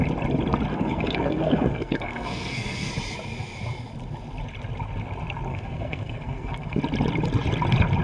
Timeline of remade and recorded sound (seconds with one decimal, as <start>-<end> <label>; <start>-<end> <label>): 0.0-0.7 recorded; 0.7-2.9 remade; 2.9-5.5 recorded; 5.5-6.8 remade; 6.8-8.0 recorded